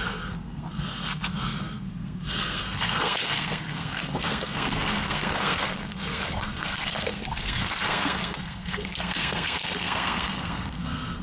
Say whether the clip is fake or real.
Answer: fake